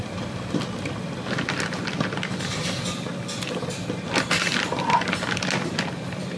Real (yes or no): yes